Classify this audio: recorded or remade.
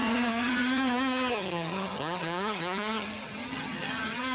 remade